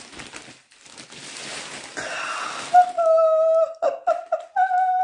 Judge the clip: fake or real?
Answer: real